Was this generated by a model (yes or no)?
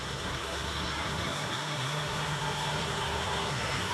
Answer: yes